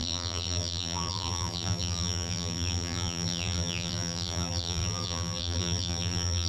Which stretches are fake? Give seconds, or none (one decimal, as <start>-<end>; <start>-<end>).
0.0-6.5